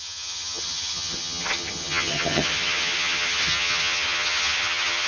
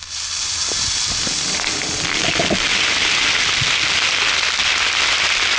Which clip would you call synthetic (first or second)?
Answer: first